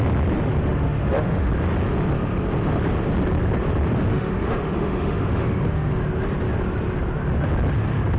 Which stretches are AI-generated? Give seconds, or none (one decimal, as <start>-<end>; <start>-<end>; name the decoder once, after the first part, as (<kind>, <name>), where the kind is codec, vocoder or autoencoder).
0.6-1.5 (autoencoder, DAC-VAE); 4.1-5.9